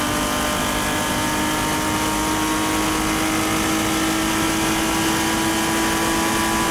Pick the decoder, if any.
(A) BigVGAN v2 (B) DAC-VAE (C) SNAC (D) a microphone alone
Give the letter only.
D